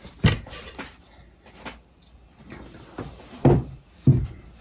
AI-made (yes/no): no